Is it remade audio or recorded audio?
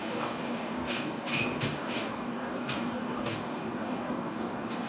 remade